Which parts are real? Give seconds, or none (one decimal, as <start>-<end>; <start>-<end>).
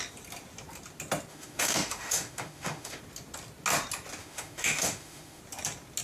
0.0-1.3; 3.0-4.2; 5.4-6.0